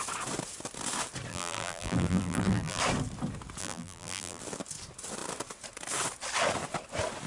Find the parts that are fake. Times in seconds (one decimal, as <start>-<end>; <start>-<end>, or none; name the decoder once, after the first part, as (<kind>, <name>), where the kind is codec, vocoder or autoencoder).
1.3-2.8 (vocoder, BigVGAN v2); 3.6-4.4